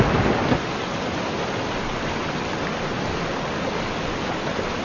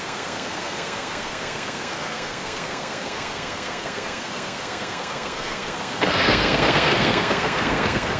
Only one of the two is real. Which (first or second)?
first